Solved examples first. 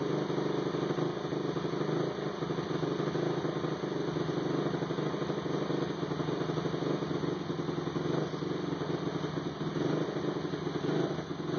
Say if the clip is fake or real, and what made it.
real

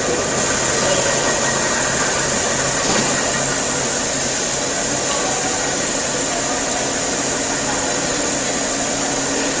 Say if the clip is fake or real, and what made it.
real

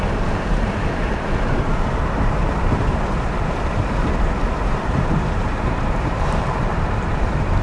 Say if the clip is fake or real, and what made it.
fake, vocoder, BigVGAN v2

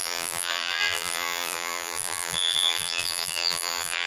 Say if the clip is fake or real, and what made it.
fake, vocoder, BigVGAN v2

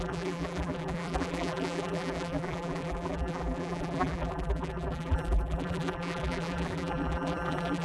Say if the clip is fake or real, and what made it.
fake, vocoder, BigVGAN v2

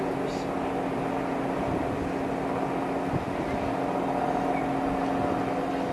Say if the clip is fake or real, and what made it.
real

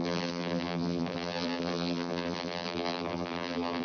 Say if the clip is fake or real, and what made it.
fake, vocoder, BigVGAN v2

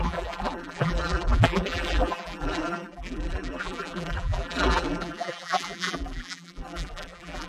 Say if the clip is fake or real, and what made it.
fake, vocoder, BigVGAN v2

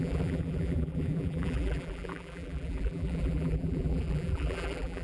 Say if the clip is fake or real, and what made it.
fake, vocoder, BigVGAN v2